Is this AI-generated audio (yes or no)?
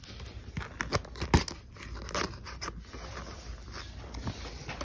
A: no